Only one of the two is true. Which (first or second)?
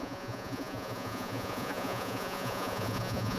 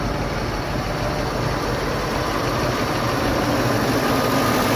second